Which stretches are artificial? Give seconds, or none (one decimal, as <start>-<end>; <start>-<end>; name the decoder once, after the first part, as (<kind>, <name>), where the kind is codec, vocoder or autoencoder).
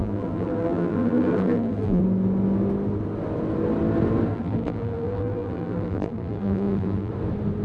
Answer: 0.0-2.0 (vocoder, BigVGAN v2); 4.3-7.1